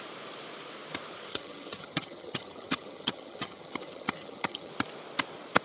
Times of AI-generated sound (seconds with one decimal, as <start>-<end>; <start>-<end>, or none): 1.3-4.7